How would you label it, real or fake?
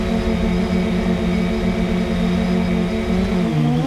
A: real